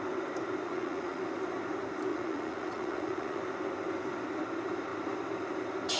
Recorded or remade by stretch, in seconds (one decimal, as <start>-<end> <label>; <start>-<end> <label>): 0.0-0.7 recorded; 0.7-1.2 remade; 1.2-2.1 recorded; 2.1-3.4 remade; 3.4-6.0 recorded